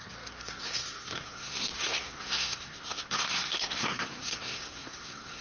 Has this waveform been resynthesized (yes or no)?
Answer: yes